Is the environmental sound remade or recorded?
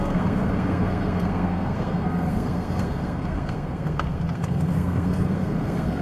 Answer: remade